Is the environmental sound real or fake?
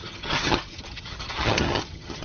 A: fake